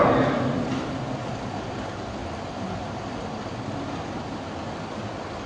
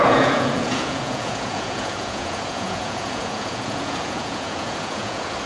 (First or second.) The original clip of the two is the first